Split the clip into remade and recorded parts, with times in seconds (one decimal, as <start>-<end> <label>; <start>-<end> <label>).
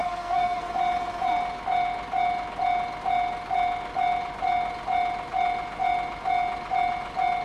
0.0-0.7 remade; 0.7-7.4 recorded